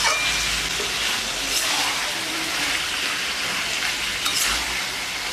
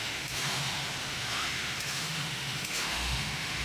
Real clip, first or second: first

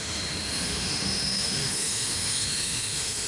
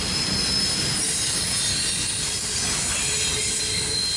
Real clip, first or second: second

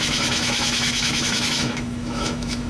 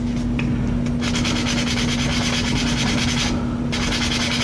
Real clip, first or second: second